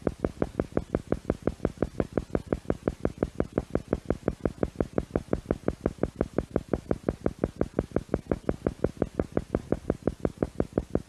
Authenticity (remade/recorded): recorded